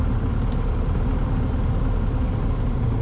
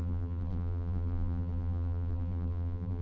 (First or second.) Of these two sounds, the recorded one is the first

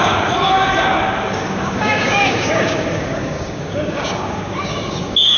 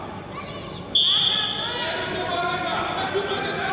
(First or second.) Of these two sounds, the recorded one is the second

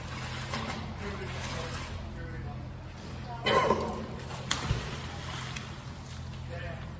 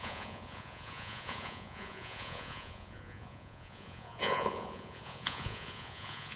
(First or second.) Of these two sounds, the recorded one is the first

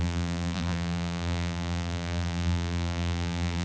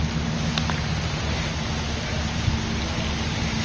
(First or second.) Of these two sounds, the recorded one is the second